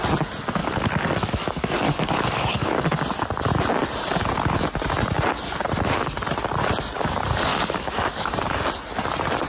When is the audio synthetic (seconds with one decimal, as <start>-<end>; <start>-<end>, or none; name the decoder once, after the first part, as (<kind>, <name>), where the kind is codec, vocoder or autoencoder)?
0.6-2.7 (codec, DAC); 7.5-8.3